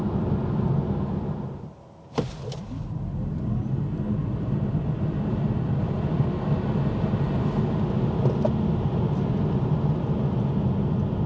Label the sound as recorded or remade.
recorded